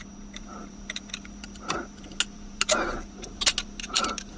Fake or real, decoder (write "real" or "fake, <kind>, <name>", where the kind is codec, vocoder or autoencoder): real